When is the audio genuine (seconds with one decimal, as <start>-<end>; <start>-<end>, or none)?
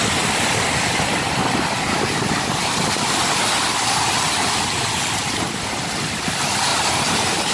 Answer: 0.0-7.5